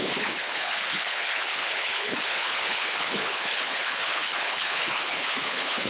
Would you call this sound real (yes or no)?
no